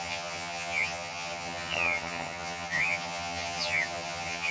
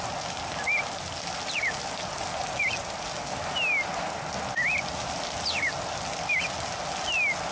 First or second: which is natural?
second